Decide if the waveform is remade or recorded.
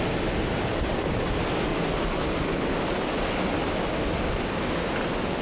recorded